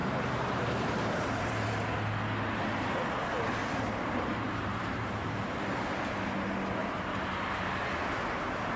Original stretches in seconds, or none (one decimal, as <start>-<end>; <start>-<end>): 1.7-3.6; 5.2-6.8; 7.8-8.8